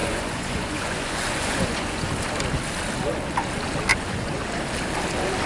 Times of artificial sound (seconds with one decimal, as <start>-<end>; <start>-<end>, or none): 0.0-2.1; 3.9-4.5